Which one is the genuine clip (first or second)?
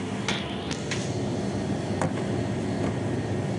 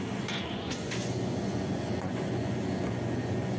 first